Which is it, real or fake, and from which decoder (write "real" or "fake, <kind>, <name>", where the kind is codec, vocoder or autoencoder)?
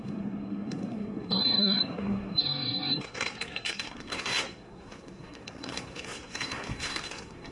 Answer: fake, codec, SNAC